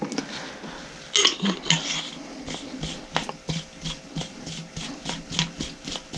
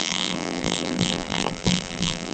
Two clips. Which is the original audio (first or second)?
first